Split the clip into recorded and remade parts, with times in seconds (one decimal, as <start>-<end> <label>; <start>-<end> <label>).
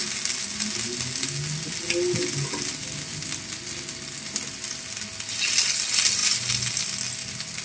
0.0-7.6 recorded